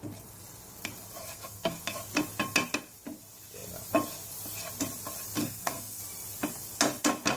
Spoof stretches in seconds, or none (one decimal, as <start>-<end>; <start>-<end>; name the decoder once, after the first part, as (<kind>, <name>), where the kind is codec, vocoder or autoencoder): 1.2-1.8 (codec, SNAC); 5.4-6.0